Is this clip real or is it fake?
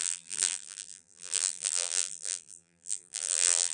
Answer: fake